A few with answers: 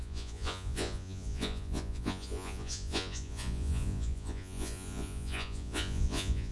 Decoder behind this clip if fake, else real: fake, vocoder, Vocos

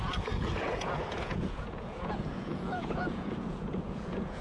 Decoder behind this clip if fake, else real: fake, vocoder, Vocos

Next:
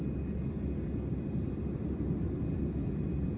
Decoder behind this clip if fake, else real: real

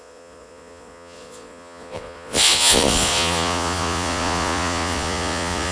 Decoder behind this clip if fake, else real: fake, vocoder, Vocos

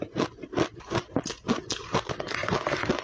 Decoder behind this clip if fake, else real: real